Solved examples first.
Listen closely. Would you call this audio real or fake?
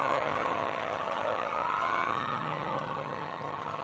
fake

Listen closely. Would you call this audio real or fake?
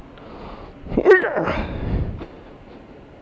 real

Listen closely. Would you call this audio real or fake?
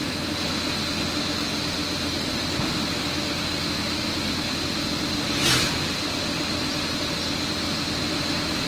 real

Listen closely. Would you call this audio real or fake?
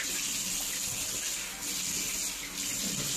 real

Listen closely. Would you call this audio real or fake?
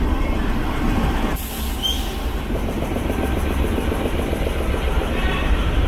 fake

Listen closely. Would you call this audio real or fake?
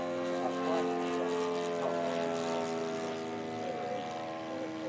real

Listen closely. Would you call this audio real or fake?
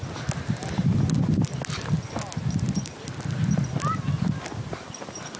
real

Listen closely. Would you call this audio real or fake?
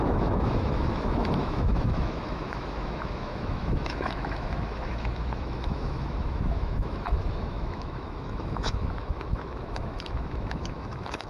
fake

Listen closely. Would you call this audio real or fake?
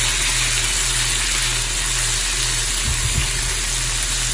real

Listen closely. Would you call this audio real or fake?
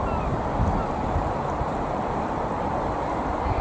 fake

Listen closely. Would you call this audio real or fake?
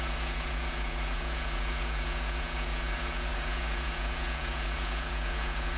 fake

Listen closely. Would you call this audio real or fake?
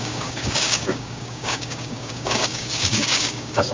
fake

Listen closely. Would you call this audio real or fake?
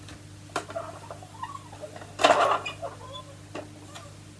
real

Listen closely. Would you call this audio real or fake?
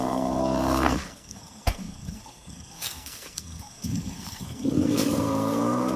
fake